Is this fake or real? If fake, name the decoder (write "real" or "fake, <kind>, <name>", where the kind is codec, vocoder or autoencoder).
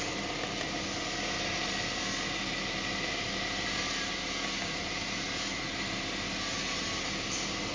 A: real